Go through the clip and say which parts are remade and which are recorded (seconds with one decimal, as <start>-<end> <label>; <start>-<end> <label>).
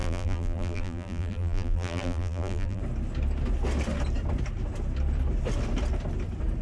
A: 0.0-2.8 remade; 2.8-6.6 recorded